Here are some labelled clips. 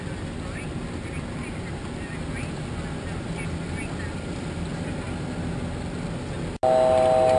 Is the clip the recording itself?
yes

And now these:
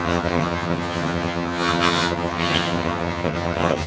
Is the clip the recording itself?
no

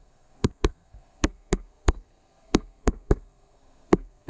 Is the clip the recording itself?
no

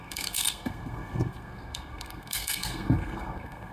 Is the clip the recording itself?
no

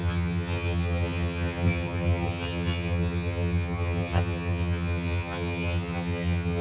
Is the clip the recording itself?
no